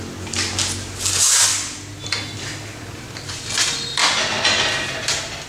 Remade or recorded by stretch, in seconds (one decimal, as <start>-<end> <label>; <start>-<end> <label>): 0.0-5.5 recorded

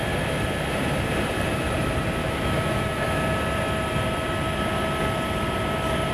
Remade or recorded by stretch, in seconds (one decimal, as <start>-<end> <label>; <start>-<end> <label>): 0.0-2.2 recorded; 2.2-3.2 remade; 3.2-6.1 recorded

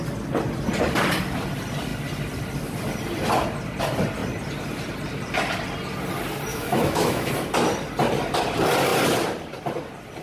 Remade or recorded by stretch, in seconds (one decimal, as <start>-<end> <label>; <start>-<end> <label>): 0.0-6.5 recorded; 6.5-7.3 remade; 7.3-10.2 recorded

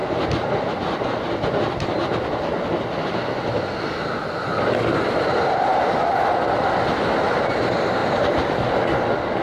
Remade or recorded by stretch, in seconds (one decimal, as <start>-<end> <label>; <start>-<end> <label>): 0.0-9.4 recorded

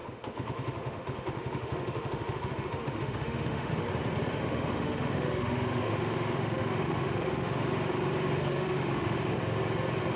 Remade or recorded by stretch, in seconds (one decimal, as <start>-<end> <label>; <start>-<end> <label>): 0.0-3.7 remade; 3.7-4.3 recorded; 4.3-7.7 remade; 7.7-8.4 recorded; 8.4-9.4 remade; 9.4-10.2 recorded

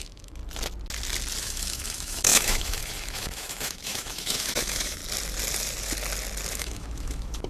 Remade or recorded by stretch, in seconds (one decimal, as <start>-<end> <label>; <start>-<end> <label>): 0.0-0.4 remade; 0.4-1.4 recorded; 1.4-5.0 remade; 5.0-6.5 recorded; 6.5-7.5 remade

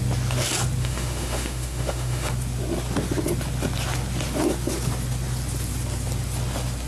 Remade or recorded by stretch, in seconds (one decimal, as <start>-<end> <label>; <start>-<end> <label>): 0.0-0.8 recorded; 0.8-2.3 remade; 2.3-6.9 recorded

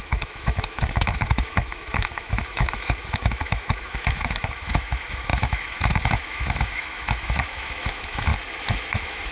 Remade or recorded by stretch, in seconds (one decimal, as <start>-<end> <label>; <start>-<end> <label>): 0.0-8.3 remade; 8.3-8.9 recorded; 8.9-9.3 remade